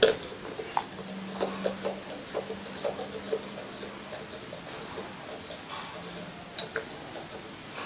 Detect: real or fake real